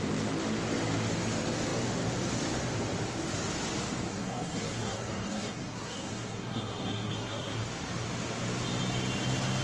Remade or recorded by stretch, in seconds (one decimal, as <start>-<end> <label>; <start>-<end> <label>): 0.0-4.1 recorded; 4.1-7.6 remade; 7.6-9.6 recorded